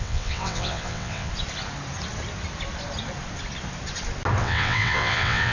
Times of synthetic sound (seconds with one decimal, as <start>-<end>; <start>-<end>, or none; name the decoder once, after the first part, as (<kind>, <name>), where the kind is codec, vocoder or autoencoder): 0.0-1.3 (vocoder, WaveNeXt); 4.4-5.5